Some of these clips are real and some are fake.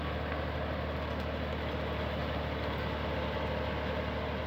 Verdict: real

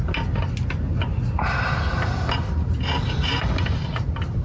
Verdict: real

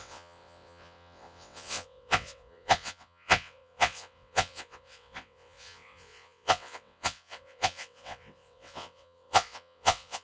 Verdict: fake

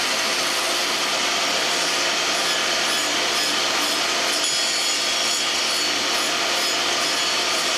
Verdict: real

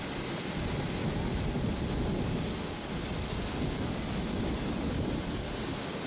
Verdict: real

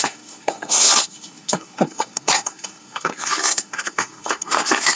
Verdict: fake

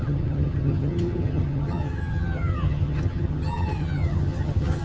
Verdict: fake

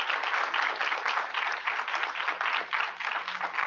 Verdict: real